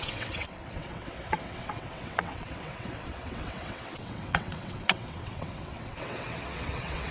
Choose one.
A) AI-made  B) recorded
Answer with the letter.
A